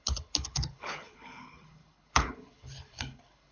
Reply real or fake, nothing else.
fake